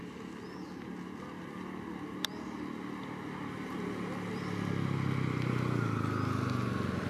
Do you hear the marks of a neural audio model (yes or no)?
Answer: no